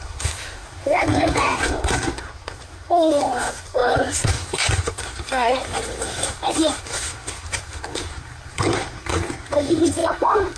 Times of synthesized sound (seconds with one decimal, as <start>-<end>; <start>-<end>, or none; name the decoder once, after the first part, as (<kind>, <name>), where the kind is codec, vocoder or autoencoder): 0.0-10.6 (codec, SNAC)